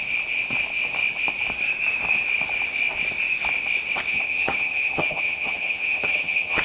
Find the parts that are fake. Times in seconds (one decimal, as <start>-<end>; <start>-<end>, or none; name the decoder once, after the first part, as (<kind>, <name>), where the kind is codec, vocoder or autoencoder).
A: 4.1-6.6 (vocoder, HiFi-GAN)